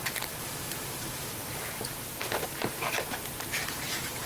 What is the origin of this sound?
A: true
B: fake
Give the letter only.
B